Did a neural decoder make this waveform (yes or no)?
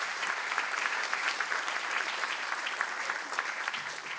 yes